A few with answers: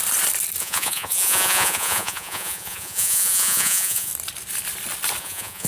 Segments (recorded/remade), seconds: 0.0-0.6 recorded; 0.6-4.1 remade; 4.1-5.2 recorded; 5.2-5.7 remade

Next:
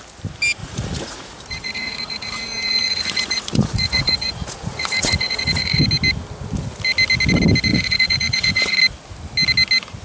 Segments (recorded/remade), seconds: 0.0-0.6 recorded; 0.6-5.8 remade; 5.8-7.7 recorded; 7.7-8.8 remade; 8.8-10.0 recorded

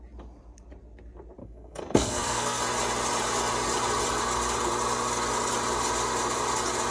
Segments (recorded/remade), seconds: 0.0-1.4 recorded; 1.4-2.6 remade; 2.6-6.9 recorded

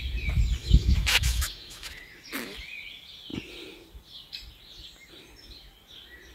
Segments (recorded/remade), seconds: 0.0-0.6 recorded; 0.6-1.9 remade; 1.9-6.3 recorded

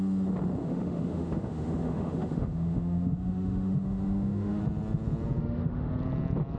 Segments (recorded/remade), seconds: 0.0-0.6 recorded; 0.6-4.6 remade; 4.6-5.4 recorded; 5.4-5.9 remade; 5.9-6.6 recorded